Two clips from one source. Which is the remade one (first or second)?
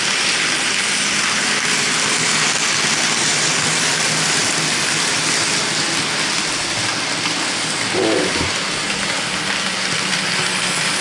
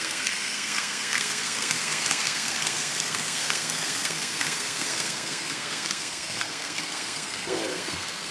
second